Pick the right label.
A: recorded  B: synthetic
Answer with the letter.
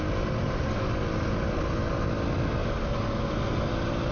A